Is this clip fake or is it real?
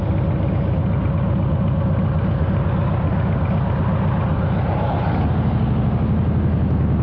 real